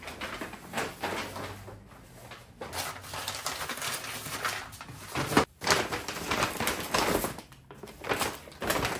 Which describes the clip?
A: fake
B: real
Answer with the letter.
B